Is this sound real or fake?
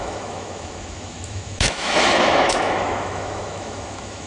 fake